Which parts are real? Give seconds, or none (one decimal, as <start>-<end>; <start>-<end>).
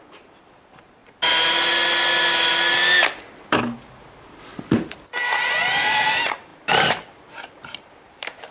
1.0-3.5; 4.5-5.8